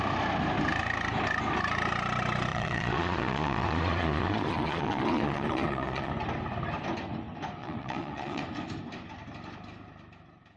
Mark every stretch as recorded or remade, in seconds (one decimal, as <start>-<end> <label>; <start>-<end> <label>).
0.0-2.5 recorded; 2.5-6.1 remade; 6.1-7.6 recorded; 7.6-8.4 remade; 8.4-10.6 recorded